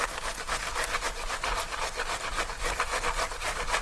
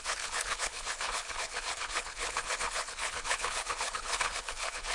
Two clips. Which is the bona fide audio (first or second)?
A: first